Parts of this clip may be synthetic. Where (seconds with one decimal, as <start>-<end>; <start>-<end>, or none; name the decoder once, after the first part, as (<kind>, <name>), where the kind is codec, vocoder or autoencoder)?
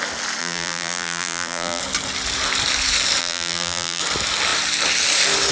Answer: 0.4-1.8 (vocoder, BigVGAN v2); 3.2-4.0